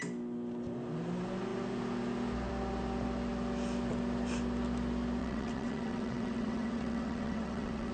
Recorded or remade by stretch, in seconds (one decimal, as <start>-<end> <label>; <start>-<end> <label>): 0.0-5.2 recorded; 5.2-7.9 remade